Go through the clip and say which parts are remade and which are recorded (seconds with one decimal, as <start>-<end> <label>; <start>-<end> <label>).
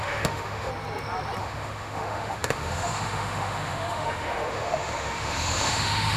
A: 0.0-0.7 remade; 0.7-1.4 recorded; 1.4-6.2 remade